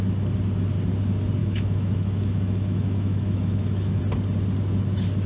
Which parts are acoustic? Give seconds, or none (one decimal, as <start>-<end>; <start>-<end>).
0.0-1.4; 4.0-5.3